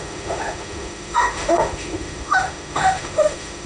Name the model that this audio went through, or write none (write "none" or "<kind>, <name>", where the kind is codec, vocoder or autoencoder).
autoencoder, DAC-VAE